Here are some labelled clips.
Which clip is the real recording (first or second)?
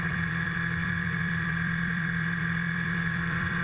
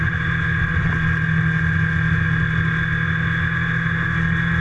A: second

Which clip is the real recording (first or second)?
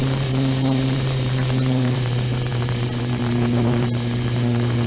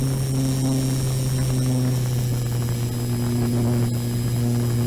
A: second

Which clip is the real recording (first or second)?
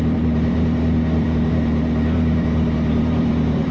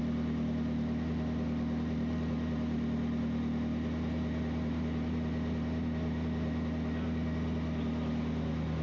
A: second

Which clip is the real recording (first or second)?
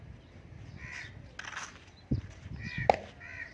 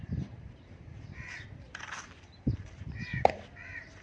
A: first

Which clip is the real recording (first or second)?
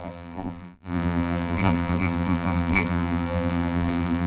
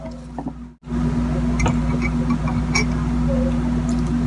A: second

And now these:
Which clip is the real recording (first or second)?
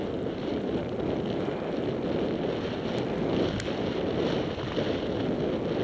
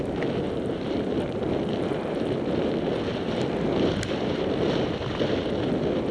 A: first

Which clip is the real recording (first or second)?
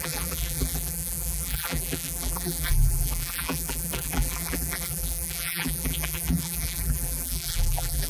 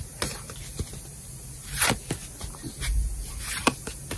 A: second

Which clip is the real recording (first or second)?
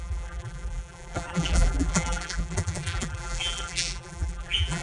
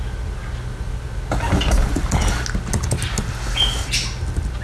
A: second